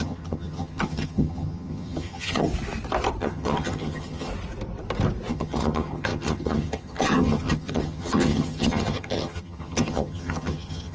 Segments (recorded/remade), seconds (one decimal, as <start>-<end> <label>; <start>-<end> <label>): 0.0-2.5 remade; 2.5-3.2 recorded; 3.2-4.3 remade; 4.3-5.3 recorded; 5.3-10.9 remade